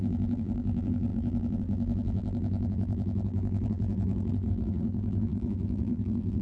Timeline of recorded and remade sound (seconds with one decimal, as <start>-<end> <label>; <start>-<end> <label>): 0.0-6.4 remade